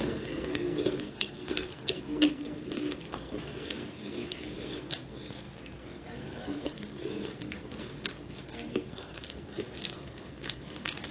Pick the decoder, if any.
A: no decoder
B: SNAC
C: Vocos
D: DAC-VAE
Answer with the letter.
B